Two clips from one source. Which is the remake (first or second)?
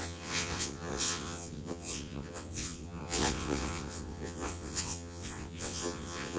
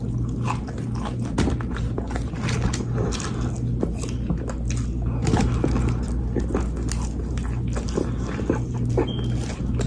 first